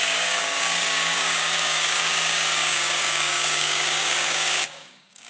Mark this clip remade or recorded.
remade